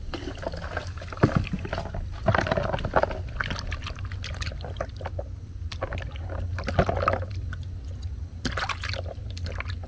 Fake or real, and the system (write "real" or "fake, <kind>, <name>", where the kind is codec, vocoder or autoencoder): real